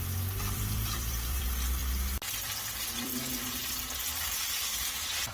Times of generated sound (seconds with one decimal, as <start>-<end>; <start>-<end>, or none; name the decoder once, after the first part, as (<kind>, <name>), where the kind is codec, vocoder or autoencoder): 0.0-1.8 (vocoder, BigVGAN v2); 2.3-3.1